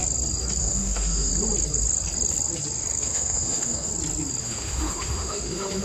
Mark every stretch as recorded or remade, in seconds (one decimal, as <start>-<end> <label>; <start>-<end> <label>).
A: 0.0-0.6 recorded; 0.6-1.3 remade; 1.3-3.0 recorded; 3.0-3.9 remade; 3.9-4.4 recorded; 4.4-5.8 remade